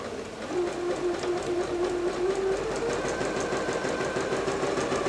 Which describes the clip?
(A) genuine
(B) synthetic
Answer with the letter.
A